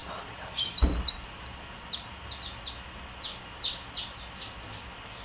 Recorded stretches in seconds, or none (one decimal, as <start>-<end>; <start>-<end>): 0.0-5.2